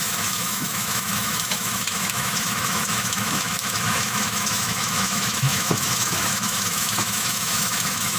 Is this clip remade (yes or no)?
yes